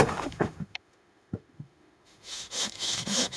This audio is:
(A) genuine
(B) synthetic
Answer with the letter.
B